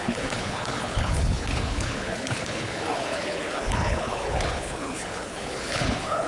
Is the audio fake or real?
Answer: fake